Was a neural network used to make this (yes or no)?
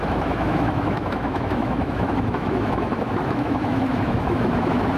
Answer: yes